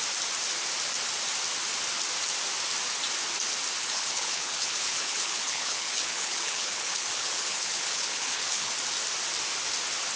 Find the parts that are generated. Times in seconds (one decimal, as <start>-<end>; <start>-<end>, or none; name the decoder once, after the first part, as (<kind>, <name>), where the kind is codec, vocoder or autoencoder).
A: 3.8-8.7 (codec, HILCodec)